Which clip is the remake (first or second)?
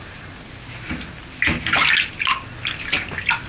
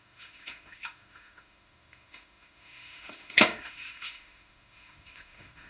second